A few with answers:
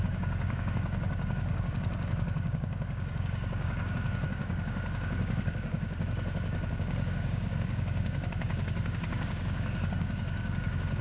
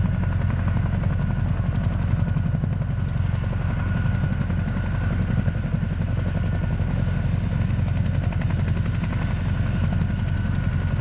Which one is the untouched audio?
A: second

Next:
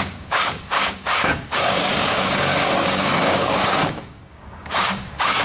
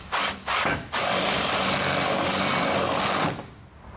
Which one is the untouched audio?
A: second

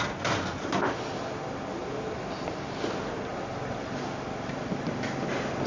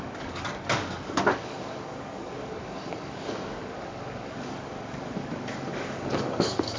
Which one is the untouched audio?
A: first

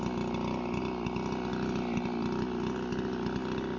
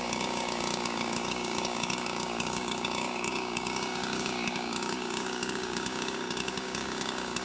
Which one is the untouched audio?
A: first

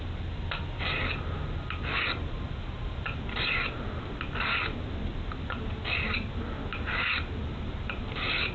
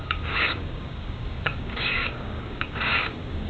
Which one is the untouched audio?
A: first